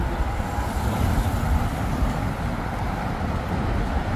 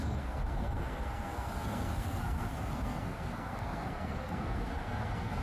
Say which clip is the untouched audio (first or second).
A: first